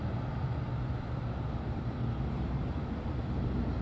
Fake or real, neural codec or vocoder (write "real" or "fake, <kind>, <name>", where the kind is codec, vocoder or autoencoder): fake, vocoder, BigVGAN v2